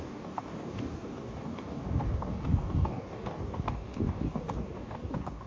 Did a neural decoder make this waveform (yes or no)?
yes